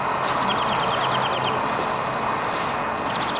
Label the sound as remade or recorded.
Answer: recorded